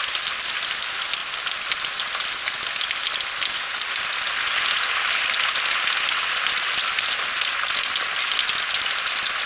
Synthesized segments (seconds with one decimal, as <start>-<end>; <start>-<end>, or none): none